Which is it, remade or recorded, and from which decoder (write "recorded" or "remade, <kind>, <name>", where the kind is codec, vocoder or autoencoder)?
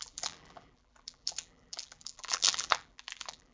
remade, vocoder, BigVGAN v2